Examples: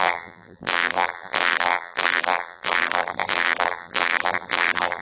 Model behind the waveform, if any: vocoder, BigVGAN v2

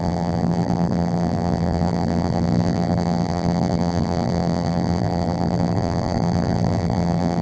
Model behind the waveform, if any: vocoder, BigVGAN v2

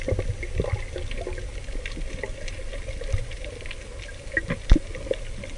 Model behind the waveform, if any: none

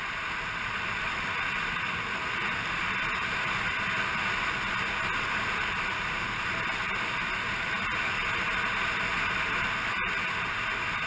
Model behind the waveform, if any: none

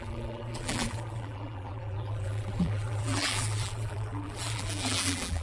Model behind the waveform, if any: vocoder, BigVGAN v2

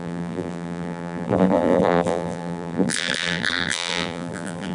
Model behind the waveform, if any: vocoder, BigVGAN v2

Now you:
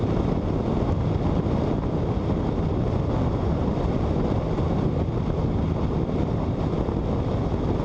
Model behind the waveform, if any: none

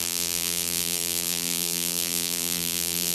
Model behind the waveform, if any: vocoder, BigVGAN v2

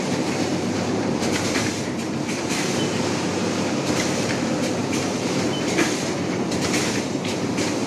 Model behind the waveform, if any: vocoder, BigVGAN v2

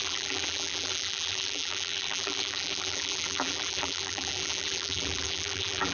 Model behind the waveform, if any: vocoder, BigVGAN v2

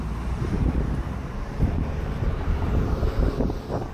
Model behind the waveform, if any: vocoder, BigVGAN v2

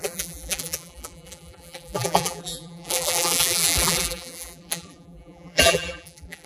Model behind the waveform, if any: vocoder, BigVGAN v2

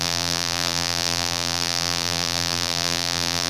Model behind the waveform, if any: vocoder, BigVGAN v2